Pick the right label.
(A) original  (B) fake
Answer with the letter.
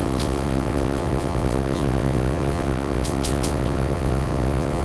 B